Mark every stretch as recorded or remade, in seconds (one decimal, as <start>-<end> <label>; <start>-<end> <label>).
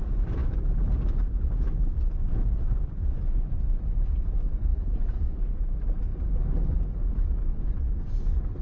0.0-4.7 recorded; 4.7-5.6 remade; 5.6-8.6 recorded